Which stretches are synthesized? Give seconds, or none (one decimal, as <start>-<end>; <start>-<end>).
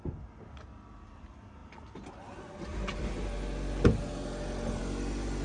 none